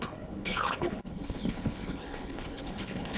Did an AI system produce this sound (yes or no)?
yes